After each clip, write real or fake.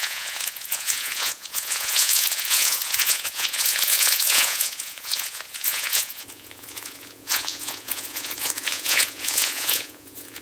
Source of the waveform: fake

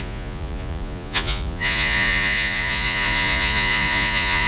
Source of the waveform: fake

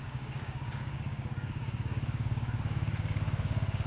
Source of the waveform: fake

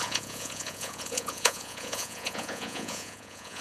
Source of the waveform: fake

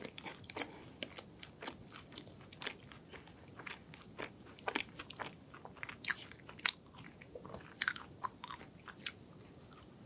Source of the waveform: real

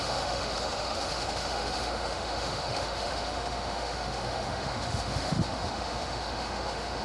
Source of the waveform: fake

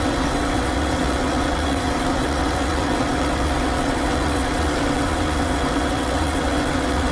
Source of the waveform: fake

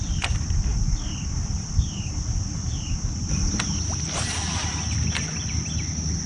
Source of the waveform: real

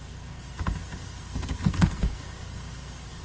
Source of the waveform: fake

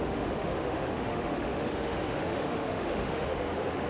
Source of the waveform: fake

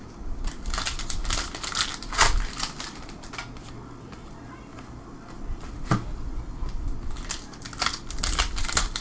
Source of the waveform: real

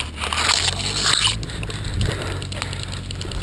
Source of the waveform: real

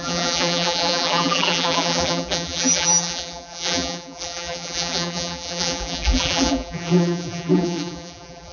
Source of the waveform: fake